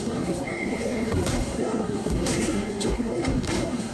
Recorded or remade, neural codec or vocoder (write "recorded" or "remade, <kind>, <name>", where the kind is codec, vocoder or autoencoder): remade, codec, SNAC